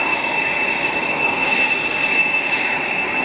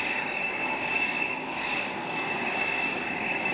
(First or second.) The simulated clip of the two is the second